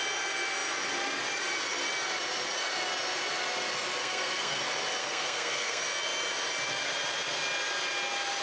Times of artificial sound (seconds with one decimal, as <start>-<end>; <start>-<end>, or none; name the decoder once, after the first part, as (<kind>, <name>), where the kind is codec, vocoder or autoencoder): 4.0-4.6 (codec, SNAC); 5.0-5.8